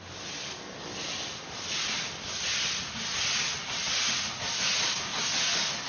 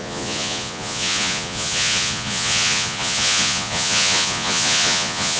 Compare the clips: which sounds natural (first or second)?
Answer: first